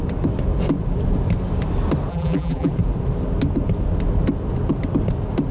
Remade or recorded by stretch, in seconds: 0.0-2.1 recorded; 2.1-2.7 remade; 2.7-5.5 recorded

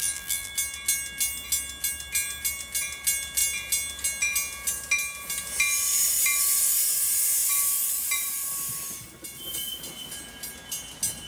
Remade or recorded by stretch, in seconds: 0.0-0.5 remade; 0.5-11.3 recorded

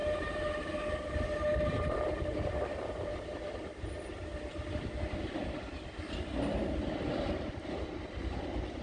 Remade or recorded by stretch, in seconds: 0.0-3.1 remade; 3.1-8.8 recorded

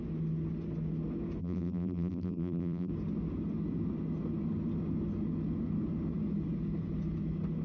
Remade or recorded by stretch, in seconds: 0.0-1.4 recorded; 1.4-2.9 remade; 2.9-7.6 recorded